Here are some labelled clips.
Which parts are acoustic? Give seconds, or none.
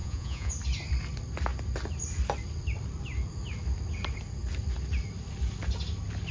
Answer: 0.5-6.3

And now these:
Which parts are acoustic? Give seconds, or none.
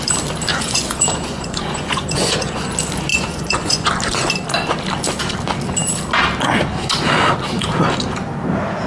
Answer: 0.0-0.5; 2.7-3.1; 3.9-8.9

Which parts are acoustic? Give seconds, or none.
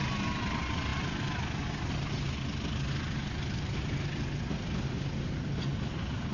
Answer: 0.0-6.3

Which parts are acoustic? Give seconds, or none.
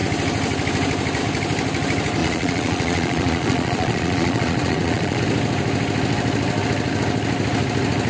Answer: 0.0-2.2; 5.2-8.1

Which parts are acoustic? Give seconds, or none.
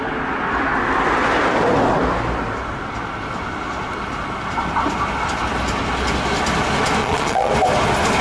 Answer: 0.0-7.0; 7.5-8.2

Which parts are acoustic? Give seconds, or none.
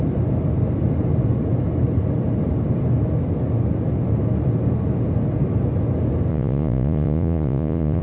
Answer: 0.0-6.3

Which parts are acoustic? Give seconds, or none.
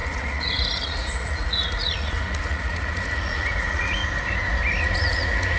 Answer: 4.0-4.8